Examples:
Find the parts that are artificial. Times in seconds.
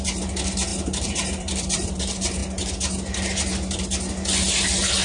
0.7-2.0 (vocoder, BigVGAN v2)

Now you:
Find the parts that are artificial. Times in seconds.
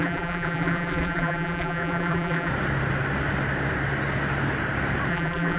0.0-2.5 (vocoder, BigVGAN v2); 5.1-5.6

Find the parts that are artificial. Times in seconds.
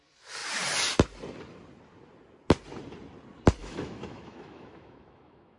3.6-5.6 (autoencoder, DAC-VAE)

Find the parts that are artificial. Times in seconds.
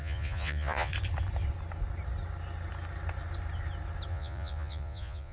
0.0-0.9 (vocoder, Vocos); 4.1-5.3